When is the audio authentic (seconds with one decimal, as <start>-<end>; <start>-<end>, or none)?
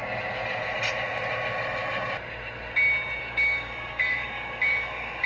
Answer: 0.0-3.2